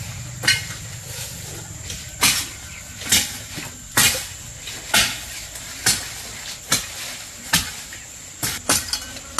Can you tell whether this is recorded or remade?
recorded